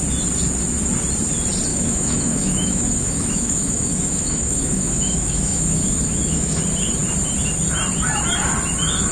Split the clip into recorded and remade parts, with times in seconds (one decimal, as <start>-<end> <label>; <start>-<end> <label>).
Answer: 0.0-1.7 recorded; 1.7-6.6 remade; 6.6-9.1 recorded